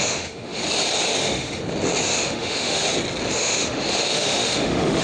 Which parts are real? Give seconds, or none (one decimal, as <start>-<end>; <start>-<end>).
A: 0.6-1.2; 1.6-2.1; 2.8-3.3